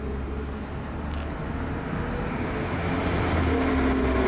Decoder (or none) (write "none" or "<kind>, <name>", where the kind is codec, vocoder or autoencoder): none